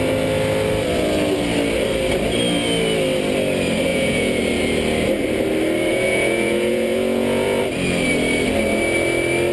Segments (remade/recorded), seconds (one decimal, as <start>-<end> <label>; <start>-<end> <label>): 0.0-3.9 recorded; 3.9-4.4 remade; 4.4-5.9 recorded; 5.9-7.6 remade; 7.6-9.5 recorded